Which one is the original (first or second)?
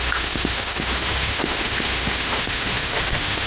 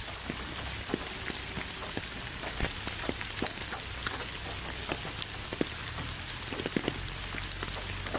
second